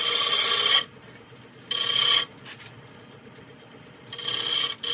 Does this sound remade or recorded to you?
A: recorded